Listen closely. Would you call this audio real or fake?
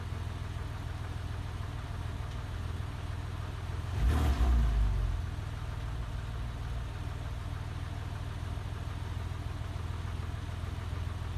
real